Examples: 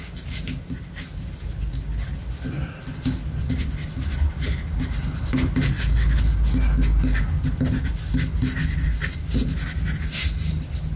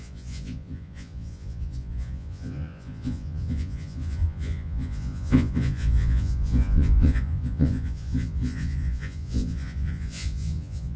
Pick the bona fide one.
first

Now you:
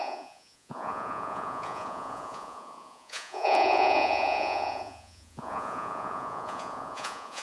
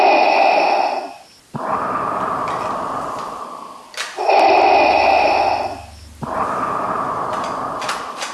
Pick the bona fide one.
second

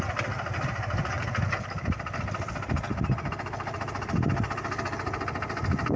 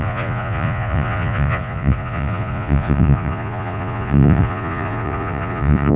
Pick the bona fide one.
first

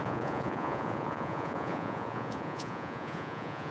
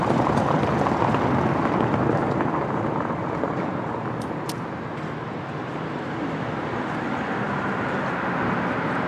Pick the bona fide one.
second